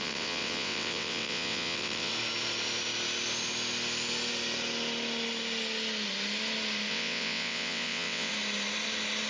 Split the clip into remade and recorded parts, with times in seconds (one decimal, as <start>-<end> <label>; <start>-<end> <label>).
0.0-2.1 remade; 2.1-6.9 recorded; 6.9-8.3 remade; 8.3-9.3 recorded